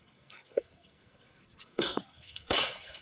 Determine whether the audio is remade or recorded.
remade